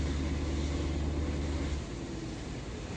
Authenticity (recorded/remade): recorded